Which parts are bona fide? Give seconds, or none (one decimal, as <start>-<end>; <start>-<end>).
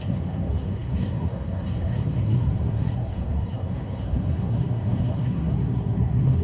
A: none